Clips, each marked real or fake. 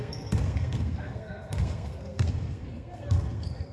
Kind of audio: fake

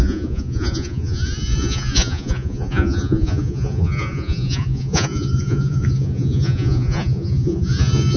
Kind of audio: fake